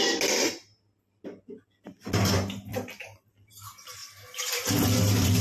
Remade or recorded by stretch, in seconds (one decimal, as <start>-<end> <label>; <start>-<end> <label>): 0.0-5.4 recorded